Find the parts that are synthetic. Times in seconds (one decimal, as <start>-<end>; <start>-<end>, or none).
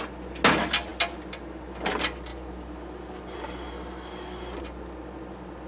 none